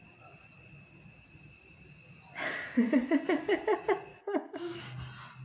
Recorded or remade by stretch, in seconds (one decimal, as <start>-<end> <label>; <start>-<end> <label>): 0.0-3.0 recorded; 3.0-3.6 remade; 3.6-4.1 recorded; 4.1-4.8 remade; 4.8-5.4 recorded